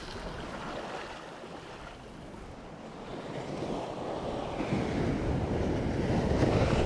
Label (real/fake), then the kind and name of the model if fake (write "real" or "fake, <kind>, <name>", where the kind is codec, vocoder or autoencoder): real